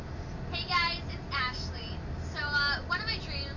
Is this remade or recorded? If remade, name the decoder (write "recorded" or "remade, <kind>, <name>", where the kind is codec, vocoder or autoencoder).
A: recorded